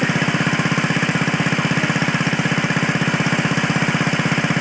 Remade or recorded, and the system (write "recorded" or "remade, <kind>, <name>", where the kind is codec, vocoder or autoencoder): recorded